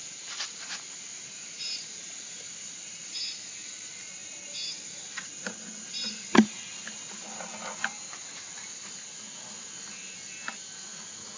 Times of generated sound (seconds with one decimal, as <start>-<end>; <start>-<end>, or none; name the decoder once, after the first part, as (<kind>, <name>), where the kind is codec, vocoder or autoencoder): 1.1-2.9 (vocoder, BigVGAN v2); 4.2-7.0